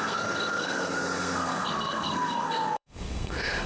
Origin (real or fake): fake